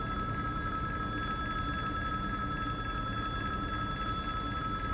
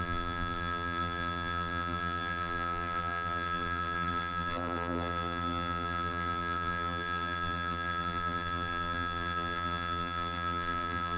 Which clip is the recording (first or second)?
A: first